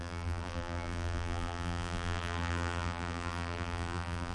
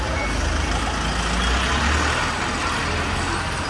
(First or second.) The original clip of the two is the second